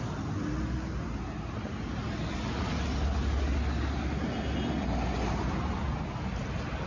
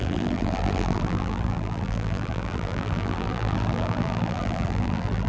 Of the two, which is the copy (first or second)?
second